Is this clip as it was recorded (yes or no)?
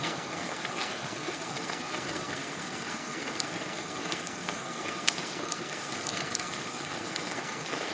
no